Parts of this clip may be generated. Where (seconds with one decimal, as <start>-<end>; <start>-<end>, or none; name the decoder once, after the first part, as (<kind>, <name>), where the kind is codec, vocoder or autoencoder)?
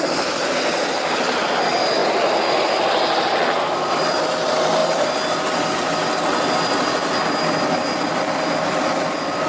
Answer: 0.0-2.0 (vocoder, BigVGAN v2); 3.9-4.8; 7.4-9.5